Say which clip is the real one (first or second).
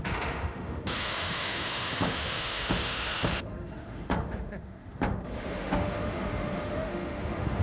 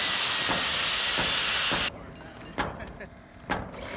second